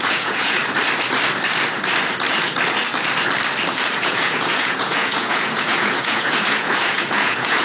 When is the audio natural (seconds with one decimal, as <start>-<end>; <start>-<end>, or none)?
0.6-4.0